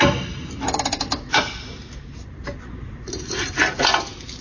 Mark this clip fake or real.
real